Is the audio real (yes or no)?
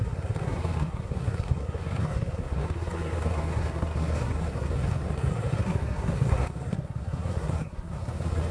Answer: no